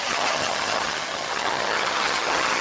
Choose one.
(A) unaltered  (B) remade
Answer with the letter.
B